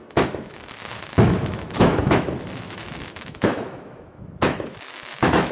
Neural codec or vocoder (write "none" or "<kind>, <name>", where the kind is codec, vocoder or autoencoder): autoencoder, DAC-VAE